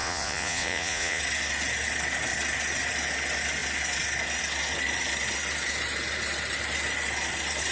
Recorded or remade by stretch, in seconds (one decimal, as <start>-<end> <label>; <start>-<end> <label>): 0.0-1.2 remade; 1.2-7.7 recorded

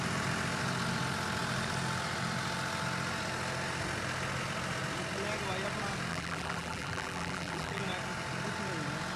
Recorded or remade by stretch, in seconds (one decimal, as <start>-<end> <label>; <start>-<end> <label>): 0.0-6.1 recorded; 6.1-7.8 remade; 7.8-9.2 recorded